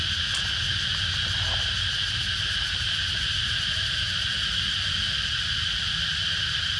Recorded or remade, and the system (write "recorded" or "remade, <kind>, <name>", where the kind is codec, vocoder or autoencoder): remade, vocoder, BigVGAN v2